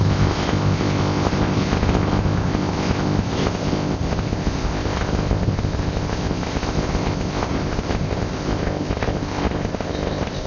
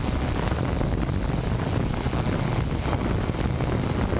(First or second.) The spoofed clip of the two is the first